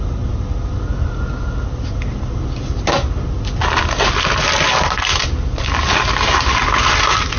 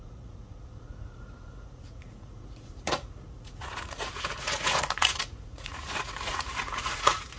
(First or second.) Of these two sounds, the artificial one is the second